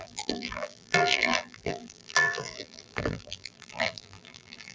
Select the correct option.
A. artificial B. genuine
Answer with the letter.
A